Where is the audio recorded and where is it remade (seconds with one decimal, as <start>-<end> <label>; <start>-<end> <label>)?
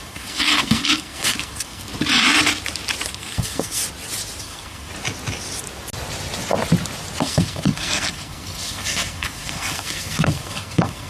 0.0-1.9 remade; 1.9-3.1 recorded; 3.1-3.8 remade; 3.8-4.4 recorded; 4.4-4.9 remade; 4.9-7.2 recorded; 7.2-11.1 remade